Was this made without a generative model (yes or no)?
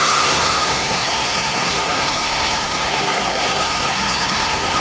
no